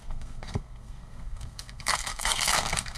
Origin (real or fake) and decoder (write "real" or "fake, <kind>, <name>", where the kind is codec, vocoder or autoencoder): fake, codec, SNAC